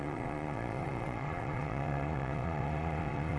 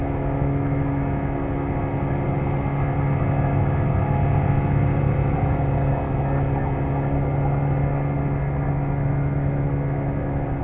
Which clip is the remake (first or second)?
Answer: first